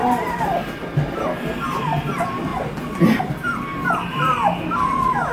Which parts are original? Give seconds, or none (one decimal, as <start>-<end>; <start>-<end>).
2.5-4.1